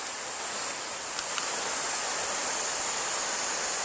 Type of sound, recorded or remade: remade